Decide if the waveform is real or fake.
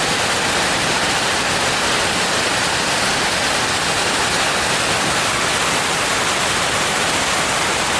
real